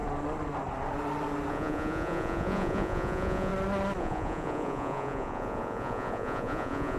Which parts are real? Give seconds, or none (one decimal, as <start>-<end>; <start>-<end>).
0.0-1.5; 3.5-4.0